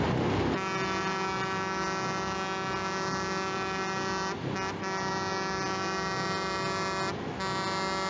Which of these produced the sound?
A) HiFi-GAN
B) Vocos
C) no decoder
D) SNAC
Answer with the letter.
C